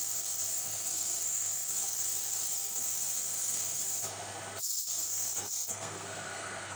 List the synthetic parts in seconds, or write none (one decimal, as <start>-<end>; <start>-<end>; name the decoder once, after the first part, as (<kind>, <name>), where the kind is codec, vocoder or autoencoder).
0.0-3.8 (codec, SNAC); 4.6-6.8